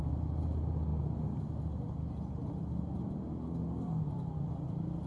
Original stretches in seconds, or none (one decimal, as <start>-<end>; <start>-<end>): 0.0-5.1